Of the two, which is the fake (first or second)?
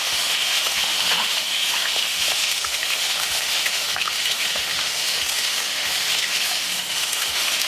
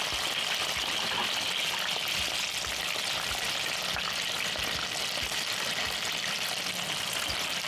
first